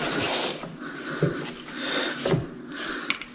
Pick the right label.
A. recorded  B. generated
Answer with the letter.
A